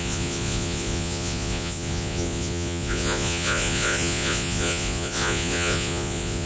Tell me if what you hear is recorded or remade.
remade